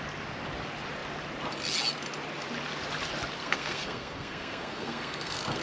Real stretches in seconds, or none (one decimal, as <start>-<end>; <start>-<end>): 0.0-3.4